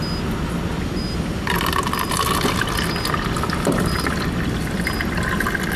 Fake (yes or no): no